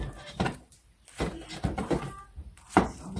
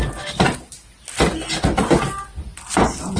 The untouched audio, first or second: second